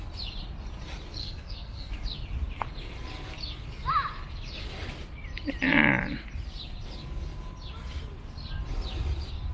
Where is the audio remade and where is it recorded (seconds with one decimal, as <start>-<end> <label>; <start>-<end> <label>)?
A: 0.0-1.2 recorded; 1.2-1.9 remade; 1.9-9.5 recorded